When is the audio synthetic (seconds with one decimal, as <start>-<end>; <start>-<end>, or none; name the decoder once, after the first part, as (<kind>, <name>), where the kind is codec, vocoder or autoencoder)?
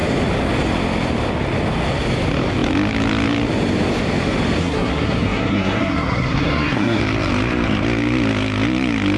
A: 4.6-7.0 (codec, SNAC)